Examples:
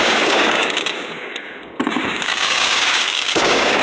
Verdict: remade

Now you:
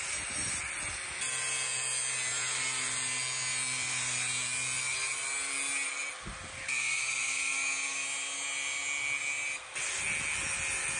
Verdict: recorded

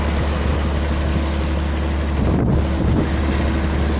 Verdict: recorded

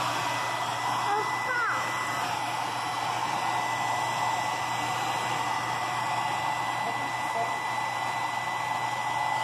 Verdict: recorded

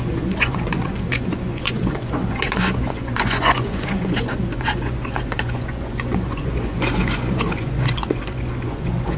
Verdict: remade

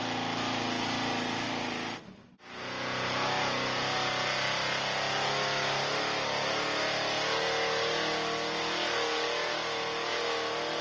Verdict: recorded